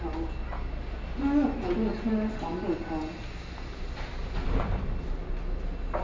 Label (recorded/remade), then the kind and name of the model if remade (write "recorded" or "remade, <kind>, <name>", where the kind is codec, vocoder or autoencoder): recorded